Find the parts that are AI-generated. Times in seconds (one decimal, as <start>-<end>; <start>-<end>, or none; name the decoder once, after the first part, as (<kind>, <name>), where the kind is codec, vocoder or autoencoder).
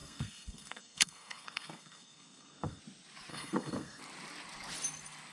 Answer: 0.0-2.8 (codec, SNAC); 3.3-4.0